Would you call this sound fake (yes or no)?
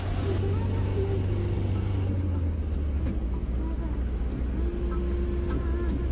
no